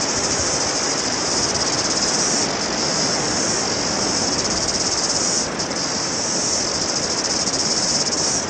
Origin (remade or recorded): remade